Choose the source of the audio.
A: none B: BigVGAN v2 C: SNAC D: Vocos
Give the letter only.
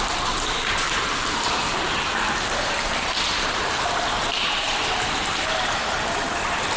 B